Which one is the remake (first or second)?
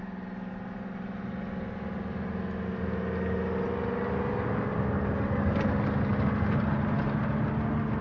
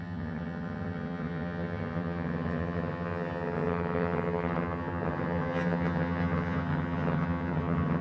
second